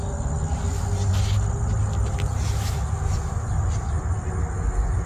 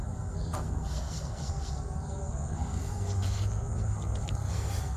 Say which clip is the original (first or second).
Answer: first